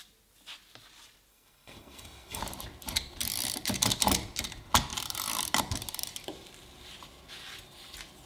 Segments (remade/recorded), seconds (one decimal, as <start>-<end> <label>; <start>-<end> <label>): 0.0-1.3 recorded; 1.3-2.4 remade; 2.4-8.3 recorded